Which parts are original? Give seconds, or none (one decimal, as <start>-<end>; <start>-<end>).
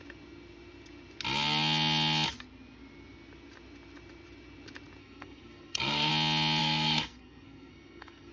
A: 0.0-5.0; 6.1-6.6